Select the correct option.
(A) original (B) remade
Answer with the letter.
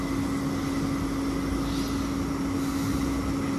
A